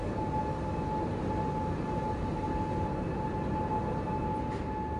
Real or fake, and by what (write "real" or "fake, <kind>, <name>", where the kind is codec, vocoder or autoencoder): real